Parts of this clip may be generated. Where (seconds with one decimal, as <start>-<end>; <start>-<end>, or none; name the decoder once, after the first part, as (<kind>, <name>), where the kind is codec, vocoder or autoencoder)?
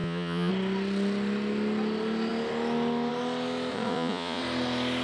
0.0-0.5 (vocoder, Vocos); 3.7-4.4